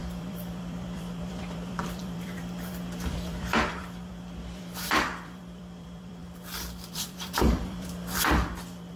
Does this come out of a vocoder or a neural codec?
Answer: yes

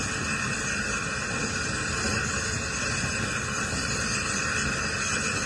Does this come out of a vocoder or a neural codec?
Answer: no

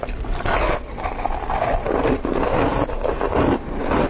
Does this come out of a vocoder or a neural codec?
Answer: no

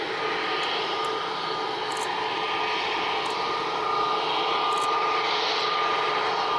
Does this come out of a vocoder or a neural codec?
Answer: no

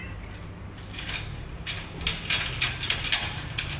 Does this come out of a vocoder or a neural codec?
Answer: no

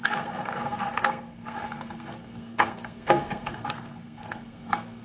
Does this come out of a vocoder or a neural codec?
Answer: yes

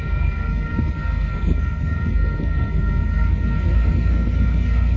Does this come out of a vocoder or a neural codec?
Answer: yes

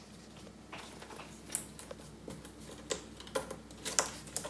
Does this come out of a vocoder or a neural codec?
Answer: no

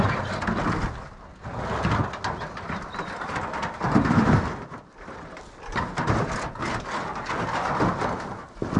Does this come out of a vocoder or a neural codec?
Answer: no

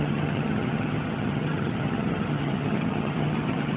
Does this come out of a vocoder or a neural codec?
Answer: yes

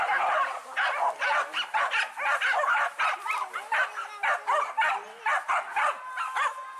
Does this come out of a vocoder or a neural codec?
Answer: no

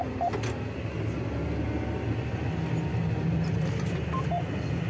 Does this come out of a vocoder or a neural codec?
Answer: no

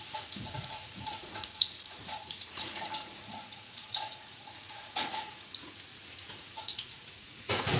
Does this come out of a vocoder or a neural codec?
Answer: yes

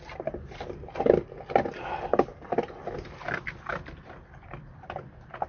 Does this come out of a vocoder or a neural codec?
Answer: no